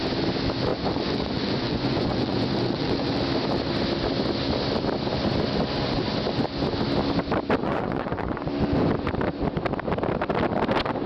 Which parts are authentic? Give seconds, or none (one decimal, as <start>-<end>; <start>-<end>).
0.0-0.7; 3.2-7.6; 8.5-11.1